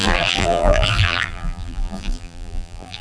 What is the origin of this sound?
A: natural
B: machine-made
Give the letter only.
B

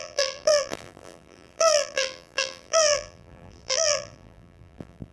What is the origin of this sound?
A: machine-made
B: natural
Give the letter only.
A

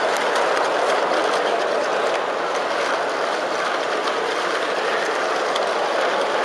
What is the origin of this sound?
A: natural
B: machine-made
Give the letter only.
A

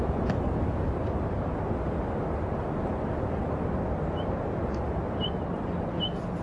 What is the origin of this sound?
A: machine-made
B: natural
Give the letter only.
B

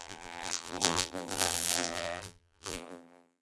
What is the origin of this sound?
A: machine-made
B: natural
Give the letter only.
A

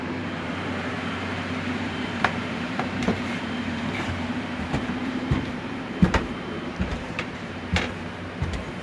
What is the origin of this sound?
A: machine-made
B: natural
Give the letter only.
A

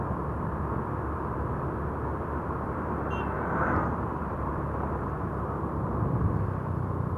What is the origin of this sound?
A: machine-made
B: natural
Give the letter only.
A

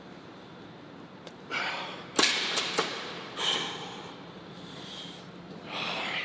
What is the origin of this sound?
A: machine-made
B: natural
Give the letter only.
A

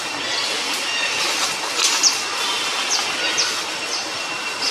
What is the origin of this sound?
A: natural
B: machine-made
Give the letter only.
A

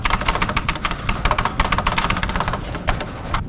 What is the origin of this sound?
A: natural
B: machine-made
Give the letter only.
A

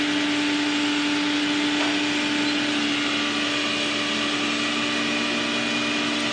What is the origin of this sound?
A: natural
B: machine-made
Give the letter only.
A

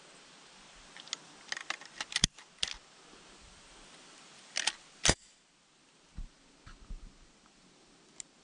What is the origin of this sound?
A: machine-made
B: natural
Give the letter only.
B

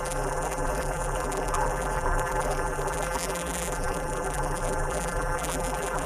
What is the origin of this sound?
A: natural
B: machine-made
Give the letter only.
B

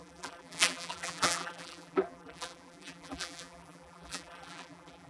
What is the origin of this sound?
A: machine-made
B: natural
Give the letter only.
A